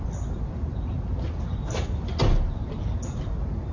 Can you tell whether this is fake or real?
real